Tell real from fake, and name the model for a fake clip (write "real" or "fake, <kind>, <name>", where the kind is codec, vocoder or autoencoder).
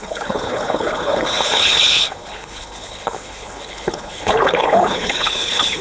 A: fake, codec, HILCodec